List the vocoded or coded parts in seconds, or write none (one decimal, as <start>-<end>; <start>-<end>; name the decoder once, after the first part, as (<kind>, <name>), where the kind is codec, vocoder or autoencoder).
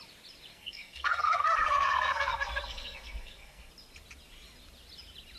0.5-3.7 (codec, SNAC)